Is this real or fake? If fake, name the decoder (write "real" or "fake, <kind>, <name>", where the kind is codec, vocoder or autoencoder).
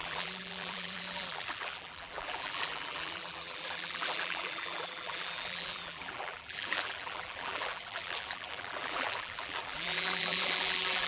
fake, vocoder, BigVGAN v2